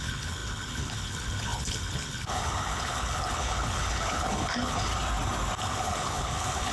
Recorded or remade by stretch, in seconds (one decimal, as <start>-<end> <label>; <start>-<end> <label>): 0.0-4.9 remade; 4.9-5.6 recorded; 5.6-6.7 remade